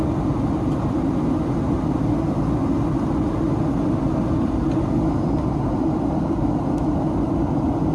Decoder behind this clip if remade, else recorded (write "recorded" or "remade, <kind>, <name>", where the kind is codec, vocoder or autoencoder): recorded